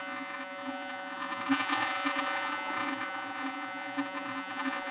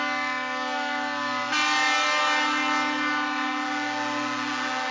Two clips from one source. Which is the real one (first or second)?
second